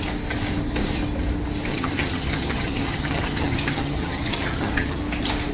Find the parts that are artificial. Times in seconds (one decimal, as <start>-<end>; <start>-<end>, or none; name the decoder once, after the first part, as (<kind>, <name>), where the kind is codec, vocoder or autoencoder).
1.7-5.0 (vocoder, HiFi-GAN)